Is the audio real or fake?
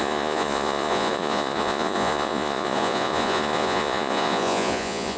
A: fake